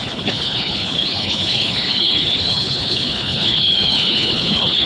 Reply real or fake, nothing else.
fake